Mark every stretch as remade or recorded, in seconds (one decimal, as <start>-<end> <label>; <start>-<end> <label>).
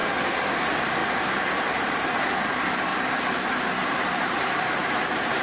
0.0-0.5 recorded; 0.5-2.9 remade; 2.9-3.9 recorded; 3.9-5.4 remade